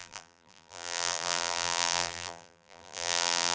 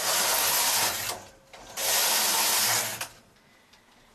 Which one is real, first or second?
second